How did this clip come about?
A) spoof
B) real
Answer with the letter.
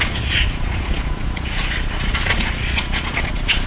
A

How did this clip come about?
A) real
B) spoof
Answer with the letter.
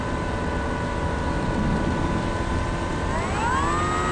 A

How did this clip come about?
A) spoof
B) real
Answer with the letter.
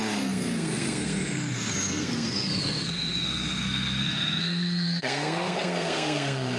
A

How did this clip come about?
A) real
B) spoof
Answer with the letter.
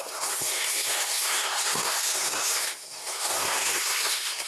B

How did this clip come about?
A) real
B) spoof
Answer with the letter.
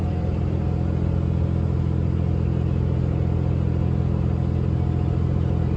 A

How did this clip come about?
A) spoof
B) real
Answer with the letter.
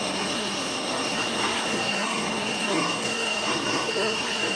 A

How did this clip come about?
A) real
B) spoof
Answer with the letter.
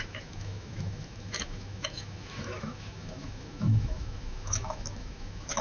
B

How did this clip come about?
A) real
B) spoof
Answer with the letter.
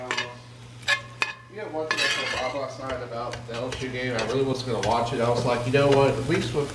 A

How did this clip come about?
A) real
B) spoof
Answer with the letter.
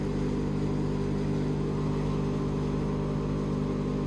A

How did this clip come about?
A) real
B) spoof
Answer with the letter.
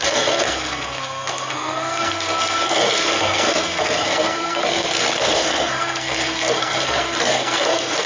B